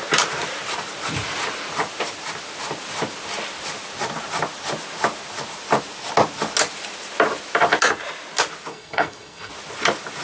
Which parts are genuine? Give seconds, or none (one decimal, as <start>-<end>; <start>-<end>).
0.0-8.7; 9.5-10.2